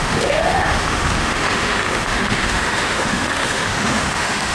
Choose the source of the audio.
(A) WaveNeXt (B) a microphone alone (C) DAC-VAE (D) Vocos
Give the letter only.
C